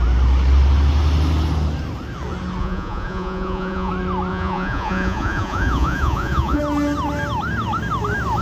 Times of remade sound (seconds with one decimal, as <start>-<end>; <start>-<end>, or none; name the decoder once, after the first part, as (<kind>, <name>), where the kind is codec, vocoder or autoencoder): 2.6-3.9 (vocoder, Vocos); 4.3-6.6